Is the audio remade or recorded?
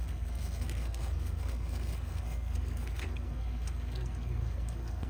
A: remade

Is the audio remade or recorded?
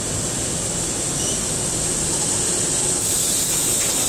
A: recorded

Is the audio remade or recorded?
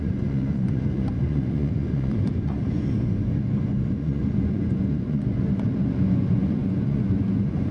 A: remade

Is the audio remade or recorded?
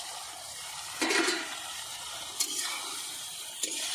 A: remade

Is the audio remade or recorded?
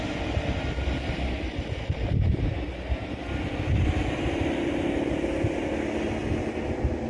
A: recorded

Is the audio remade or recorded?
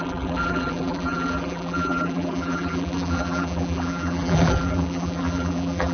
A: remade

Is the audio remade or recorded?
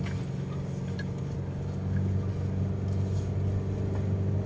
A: recorded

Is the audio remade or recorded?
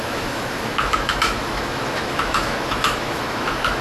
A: remade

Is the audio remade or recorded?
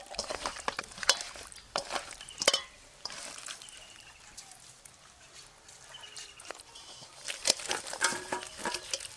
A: remade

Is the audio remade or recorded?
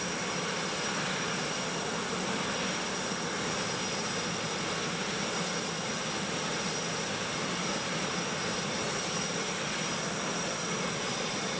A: recorded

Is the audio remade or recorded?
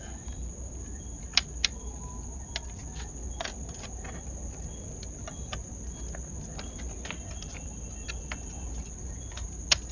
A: recorded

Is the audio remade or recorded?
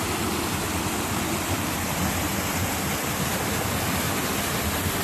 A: remade